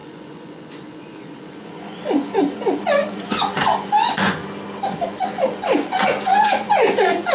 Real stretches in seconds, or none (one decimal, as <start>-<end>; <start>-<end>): 4.4-4.9